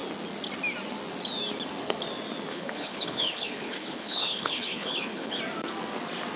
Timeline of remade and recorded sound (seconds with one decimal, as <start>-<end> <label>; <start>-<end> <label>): 0.0-2.5 recorded; 2.5-5.4 remade; 5.4-6.4 recorded

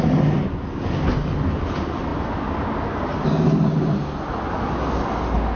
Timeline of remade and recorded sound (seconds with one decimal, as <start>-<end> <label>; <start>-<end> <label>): 0.0-5.6 recorded

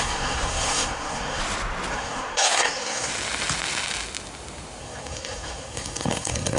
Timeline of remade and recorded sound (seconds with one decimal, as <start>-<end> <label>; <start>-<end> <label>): 0.0-1.4 remade; 1.4-1.9 recorded; 1.9-3.1 remade; 3.1-4.8 recorded; 4.8-6.6 remade

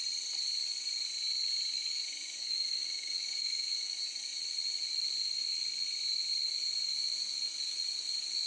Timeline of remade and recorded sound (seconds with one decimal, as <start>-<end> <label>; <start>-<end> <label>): 0.0-1.9 recorded; 1.9-4.4 remade; 4.4-8.5 recorded

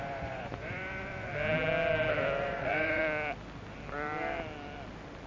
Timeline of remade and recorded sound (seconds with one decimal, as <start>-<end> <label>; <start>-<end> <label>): 0.0-1.3 remade; 1.3-2.4 recorded; 2.4-3.0 remade; 3.0-5.3 recorded

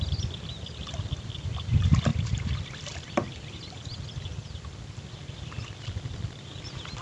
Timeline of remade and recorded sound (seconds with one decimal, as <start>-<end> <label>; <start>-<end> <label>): 0.0-7.0 recorded